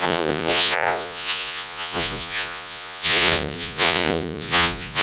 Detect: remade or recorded remade